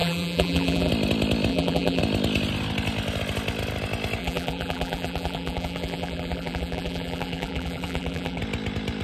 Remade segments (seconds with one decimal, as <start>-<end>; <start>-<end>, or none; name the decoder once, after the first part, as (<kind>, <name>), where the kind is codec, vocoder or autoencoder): 0.0-0.9 (vocoder, BigVGAN v2); 1.5-2.0; 4.2-8.4